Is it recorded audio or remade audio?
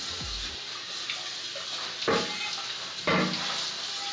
recorded